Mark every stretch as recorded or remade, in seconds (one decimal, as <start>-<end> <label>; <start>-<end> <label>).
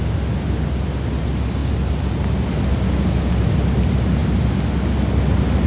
0.0-5.7 recorded